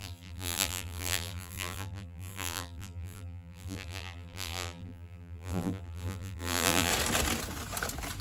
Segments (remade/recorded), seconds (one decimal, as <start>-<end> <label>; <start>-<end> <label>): 0.0-6.9 remade; 6.9-8.2 recorded